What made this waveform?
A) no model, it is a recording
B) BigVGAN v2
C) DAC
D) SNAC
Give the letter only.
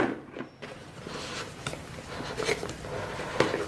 B